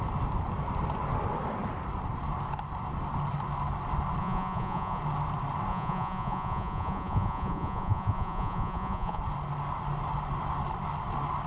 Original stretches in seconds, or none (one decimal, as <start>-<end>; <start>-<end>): 0.0-4.2; 5.0-5.7; 9.2-11.5